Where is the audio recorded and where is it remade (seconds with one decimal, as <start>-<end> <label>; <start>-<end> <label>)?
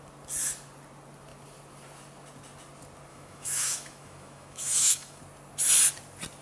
0.0-3.1 recorded; 3.1-5.2 remade; 5.2-6.4 recorded